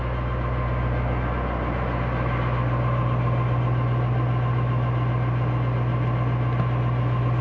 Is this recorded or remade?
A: recorded